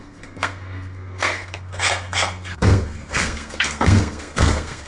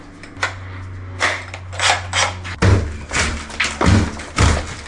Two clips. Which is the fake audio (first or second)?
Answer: first